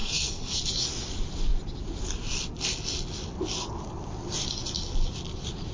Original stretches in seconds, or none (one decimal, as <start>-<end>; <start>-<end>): 0.6-5.7